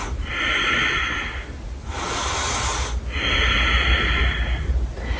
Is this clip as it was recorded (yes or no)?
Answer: yes